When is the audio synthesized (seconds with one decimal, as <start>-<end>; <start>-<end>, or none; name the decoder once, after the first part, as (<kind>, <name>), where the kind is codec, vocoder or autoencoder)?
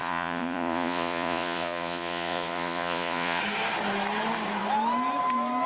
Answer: 0.0-3.4 (vocoder, Vocos)